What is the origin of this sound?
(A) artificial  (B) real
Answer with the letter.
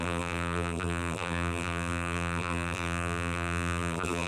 A